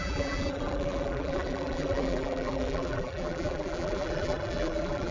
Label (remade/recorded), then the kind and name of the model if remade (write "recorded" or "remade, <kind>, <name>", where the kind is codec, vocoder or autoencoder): remade, vocoder, BigVGAN v2